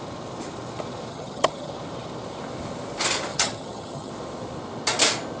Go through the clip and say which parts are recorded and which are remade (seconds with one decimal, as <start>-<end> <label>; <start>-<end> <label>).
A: 0.0-1.1 recorded; 1.1-1.7 remade; 1.7-3.3 recorded; 3.3-4.1 remade; 4.1-5.4 recorded